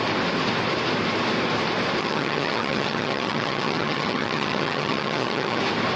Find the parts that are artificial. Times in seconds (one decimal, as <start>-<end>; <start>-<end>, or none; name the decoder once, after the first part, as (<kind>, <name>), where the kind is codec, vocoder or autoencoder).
2.0-5.6 (vocoder, HiFi-GAN)